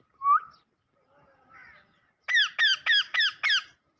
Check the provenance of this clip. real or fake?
real